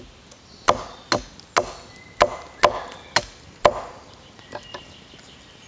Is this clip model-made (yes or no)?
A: no